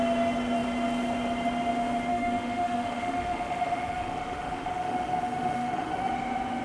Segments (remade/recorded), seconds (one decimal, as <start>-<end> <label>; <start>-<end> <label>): 0.0-2.1 recorded; 2.1-6.1 remade; 6.1-6.6 recorded